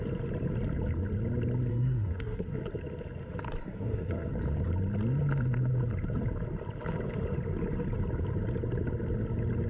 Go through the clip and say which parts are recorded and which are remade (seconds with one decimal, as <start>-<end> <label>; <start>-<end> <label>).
0.0-1.7 recorded; 1.7-2.6 remade; 2.6-3.6 recorded; 3.6-4.3 remade; 4.3-9.7 recorded